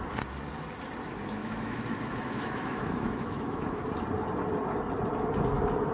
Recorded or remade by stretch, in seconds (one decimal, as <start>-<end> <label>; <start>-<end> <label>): 0.0-1.4 recorded; 1.4-3.8 remade; 3.8-5.9 recorded